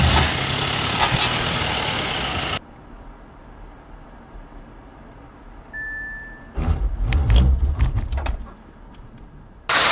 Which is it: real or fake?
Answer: real